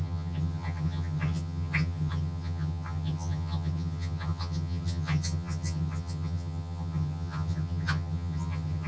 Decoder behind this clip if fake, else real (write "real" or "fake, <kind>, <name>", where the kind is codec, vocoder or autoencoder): fake, vocoder, HiFi-GAN